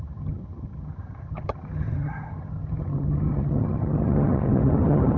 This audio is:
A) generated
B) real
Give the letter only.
A